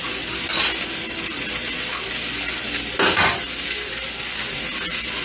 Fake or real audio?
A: real